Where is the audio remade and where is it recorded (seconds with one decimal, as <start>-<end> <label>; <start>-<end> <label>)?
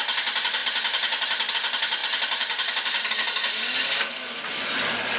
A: 0.0-5.2 recorded